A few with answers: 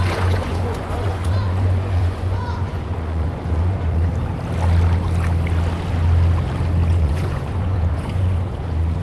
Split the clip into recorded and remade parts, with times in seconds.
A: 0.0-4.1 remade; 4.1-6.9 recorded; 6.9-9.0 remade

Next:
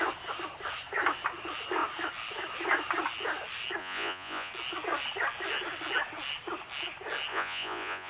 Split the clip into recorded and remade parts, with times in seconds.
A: 0.0-3.8 recorded; 3.8-4.5 remade; 4.5-7.3 recorded; 7.3-8.1 remade

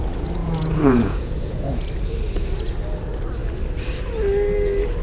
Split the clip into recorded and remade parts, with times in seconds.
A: 0.0-0.4 recorded; 0.4-1.8 remade; 1.8-5.0 recorded

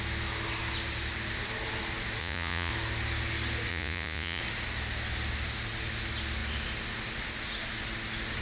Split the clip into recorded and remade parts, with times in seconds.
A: 0.0-2.2 recorded; 2.2-2.7 remade; 2.7-3.7 recorded; 3.7-4.4 remade; 4.4-8.4 recorded